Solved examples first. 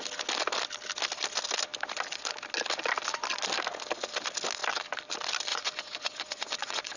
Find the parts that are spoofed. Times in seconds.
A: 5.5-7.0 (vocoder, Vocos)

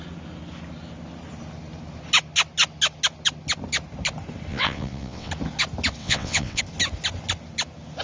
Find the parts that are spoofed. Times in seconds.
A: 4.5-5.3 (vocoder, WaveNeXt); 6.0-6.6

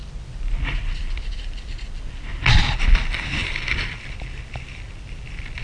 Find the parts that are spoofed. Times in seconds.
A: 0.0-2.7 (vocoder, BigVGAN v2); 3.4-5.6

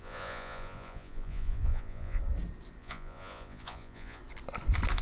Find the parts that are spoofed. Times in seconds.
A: 0.0-2.2 (vocoder, Vocos); 2.8-4.2

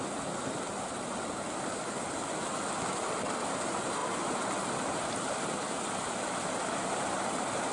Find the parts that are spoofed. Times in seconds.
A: none

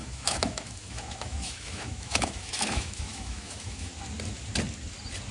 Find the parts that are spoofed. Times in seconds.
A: 0.0-3.9 (autoencoder, DAC-VAE)

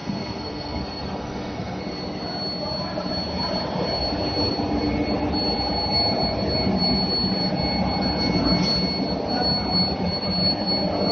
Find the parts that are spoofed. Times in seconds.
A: 0.0-1.8 (codec, SNAC)